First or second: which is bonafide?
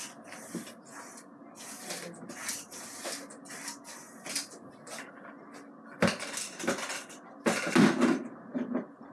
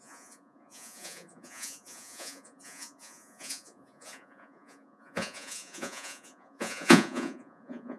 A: first